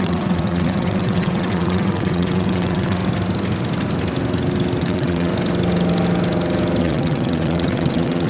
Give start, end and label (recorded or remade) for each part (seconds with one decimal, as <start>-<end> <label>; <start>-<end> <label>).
0.0-3.0 remade; 3.0-4.8 recorded; 4.8-5.3 remade; 5.3-6.8 recorded; 6.8-8.3 remade